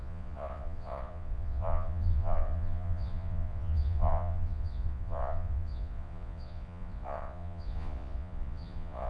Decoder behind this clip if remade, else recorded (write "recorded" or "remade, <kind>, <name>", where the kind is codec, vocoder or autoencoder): remade, vocoder, Vocos